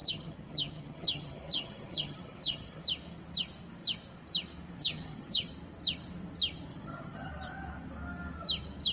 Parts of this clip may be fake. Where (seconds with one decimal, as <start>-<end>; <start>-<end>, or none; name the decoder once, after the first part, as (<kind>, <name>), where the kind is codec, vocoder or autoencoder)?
0.0-2.8 (vocoder, HiFi-GAN); 4.8-5.5; 6.7-7.3